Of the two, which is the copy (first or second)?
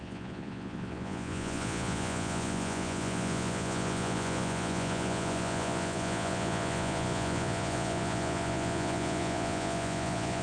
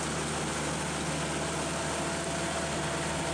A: first